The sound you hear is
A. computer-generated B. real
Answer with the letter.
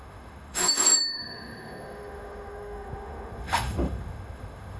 A